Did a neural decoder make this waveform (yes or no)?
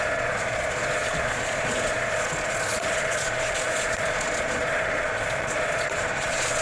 yes